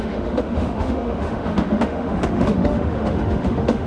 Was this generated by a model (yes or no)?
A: yes